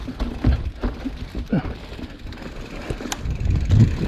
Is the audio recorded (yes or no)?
yes